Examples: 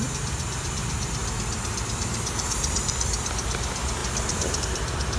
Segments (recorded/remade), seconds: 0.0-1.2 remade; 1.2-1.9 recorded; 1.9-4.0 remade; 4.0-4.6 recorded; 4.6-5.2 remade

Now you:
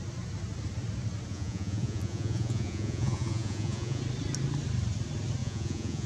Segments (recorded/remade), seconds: 0.0-1.3 recorded; 1.3-4.0 remade; 4.0-5.4 recorded; 5.4-6.1 remade

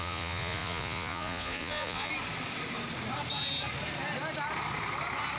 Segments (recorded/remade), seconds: 0.0-2.1 remade; 2.1-5.4 recorded